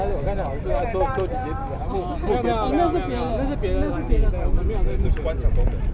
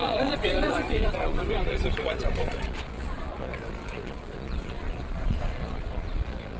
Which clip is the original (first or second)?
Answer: first